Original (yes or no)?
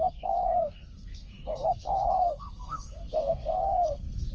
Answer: no